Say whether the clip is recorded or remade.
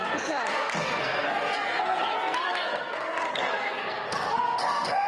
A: remade